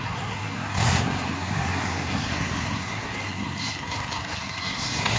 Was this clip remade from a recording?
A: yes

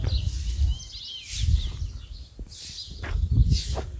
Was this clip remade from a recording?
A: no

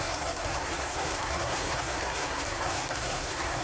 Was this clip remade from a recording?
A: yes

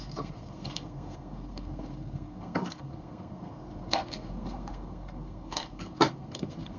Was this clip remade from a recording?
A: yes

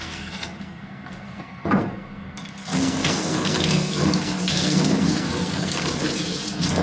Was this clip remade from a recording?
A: yes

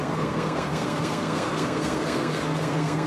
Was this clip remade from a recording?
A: yes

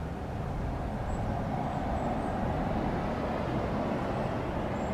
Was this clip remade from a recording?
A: no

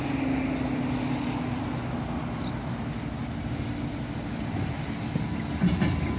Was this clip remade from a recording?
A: no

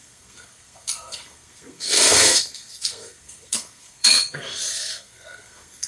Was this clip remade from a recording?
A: yes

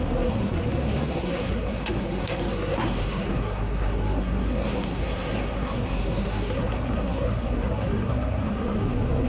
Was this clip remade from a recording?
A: yes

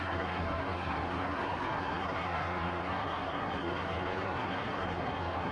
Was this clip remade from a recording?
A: yes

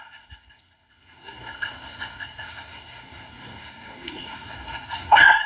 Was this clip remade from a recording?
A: yes